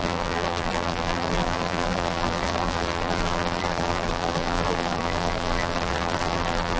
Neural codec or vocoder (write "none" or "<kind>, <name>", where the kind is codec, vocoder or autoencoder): vocoder, BigVGAN v2